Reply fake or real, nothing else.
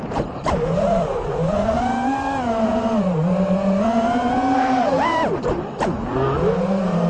fake